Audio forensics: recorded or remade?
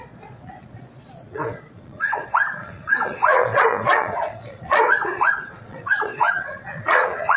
remade